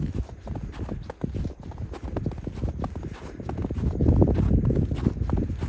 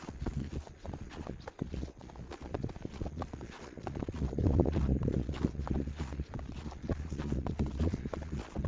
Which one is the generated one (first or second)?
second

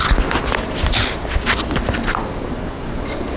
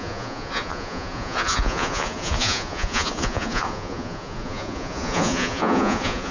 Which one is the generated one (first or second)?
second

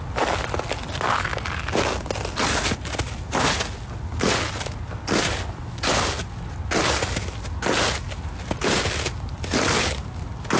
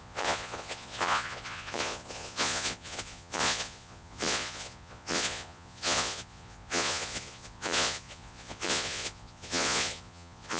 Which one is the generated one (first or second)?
second